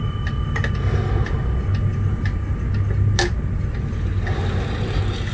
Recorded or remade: recorded